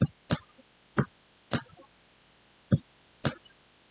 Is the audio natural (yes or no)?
yes